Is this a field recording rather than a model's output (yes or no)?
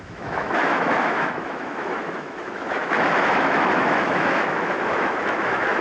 no